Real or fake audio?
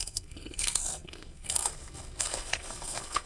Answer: fake